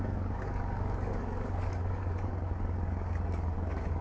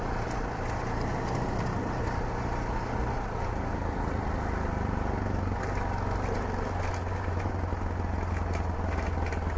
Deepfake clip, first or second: first